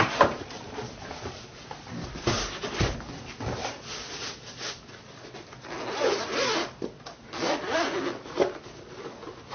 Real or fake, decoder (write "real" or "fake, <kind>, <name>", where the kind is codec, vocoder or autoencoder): real